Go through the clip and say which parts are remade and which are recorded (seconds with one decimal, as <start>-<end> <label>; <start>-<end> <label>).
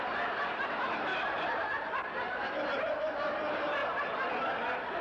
0.0-5.0 recorded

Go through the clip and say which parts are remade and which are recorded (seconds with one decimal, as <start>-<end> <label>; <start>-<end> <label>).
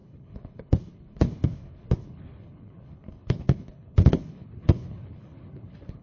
0.0-6.0 remade